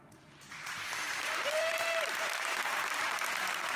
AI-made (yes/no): yes